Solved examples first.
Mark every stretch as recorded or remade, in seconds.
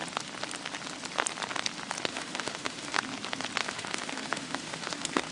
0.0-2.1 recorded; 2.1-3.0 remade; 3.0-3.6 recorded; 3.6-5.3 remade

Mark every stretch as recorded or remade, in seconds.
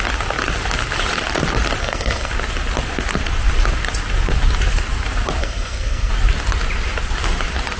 0.0-1.8 recorded; 1.8-2.3 remade; 2.3-5.4 recorded; 5.4-6.1 remade; 6.1-7.8 recorded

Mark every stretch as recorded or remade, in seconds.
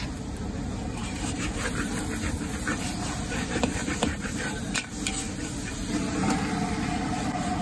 0.0-1.0 recorded; 1.0-4.9 remade; 4.9-7.6 recorded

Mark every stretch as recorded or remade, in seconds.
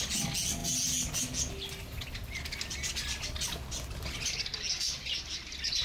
0.0-5.8 recorded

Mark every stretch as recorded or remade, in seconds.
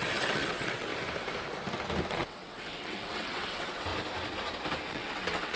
0.0-0.9 remade; 0.9-2.1 recorded; 2.1-3.9 remade; 3.9-4.9 recorded; 4.9-5.6 remade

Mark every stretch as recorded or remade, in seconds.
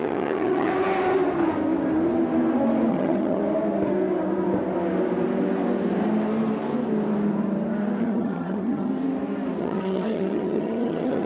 0.0-0.7 remade; 0.7-2.9 recorded; 2.9-3.4 remade; 3.4-8.0 recorded; 8.0-8.9 remade; 8.9-9.6 recorded; 9.6-11.3 remade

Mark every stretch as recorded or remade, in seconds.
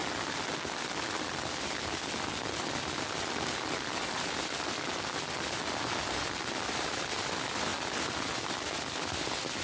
0.0-9.6 recorded